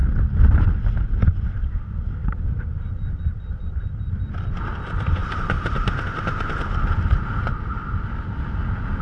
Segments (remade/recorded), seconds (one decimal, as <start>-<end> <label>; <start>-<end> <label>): 0.0-2.9 remade; 2.9-3.3 recorded; 3.3-3.9 remade; 3.9-5.2 recorded; 5.2-6.6 remade; 6.6-9.0 recorded